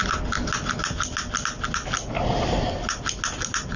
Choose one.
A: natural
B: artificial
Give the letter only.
A